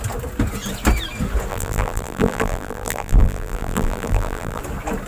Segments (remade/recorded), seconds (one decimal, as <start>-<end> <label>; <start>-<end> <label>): 0.0-1.5 recorded; 1.5-4.6 remade; 4.6-5.1 recorded